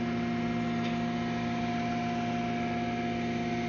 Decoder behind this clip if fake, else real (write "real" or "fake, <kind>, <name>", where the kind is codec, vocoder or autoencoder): real